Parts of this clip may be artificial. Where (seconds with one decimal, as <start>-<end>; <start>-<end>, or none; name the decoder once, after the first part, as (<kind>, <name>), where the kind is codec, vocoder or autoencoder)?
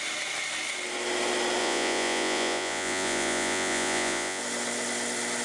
1.6-4.4 (vocoder, Vocos)